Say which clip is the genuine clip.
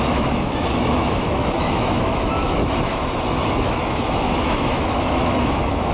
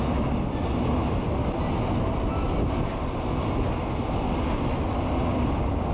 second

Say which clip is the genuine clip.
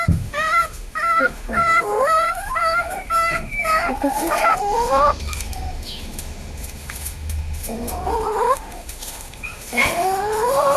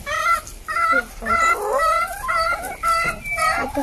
second